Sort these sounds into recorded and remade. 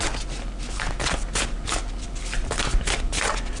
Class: recorded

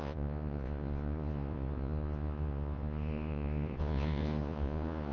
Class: remade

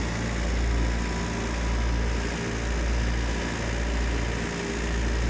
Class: recorded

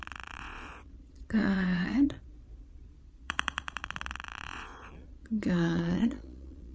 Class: remade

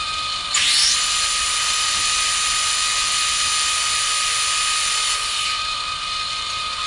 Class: recorded